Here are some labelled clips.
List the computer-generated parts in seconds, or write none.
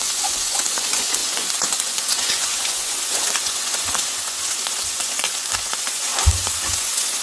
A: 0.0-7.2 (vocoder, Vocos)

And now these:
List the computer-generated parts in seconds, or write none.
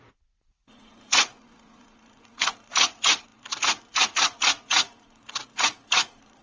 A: 0.0-6.4 (vocoder, Vocos)